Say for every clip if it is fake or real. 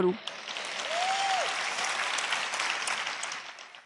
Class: real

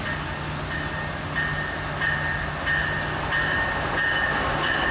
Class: real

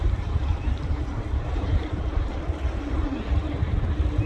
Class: fake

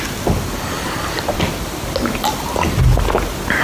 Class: real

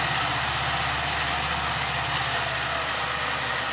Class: real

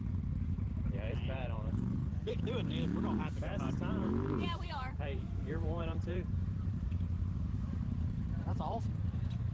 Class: fake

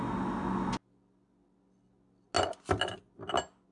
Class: real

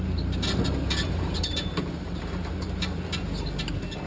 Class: real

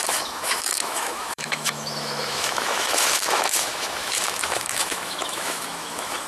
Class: fake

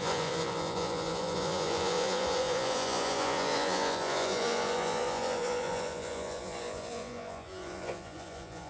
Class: fake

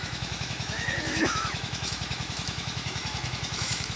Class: fake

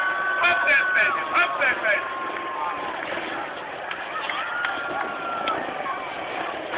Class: real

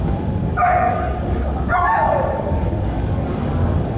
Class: fake